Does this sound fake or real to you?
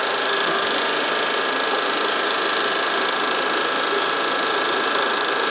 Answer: real